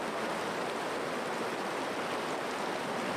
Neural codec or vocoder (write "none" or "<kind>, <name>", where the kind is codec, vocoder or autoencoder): none